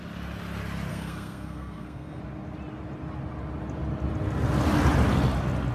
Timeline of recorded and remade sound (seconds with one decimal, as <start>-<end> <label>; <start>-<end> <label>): 0.0-0.9 recorded; 0.9-2.2 remade; 2.2-5.7 recorded